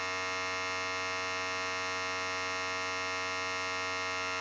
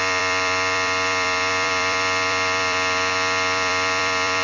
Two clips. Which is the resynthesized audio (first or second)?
second